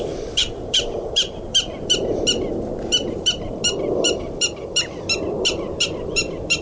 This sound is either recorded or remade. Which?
remade